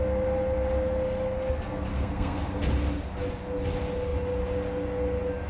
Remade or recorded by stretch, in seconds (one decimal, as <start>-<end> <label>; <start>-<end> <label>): 0.0-1.9 recorded; 1.9-2.6 remade; 2.6-5.5 recorded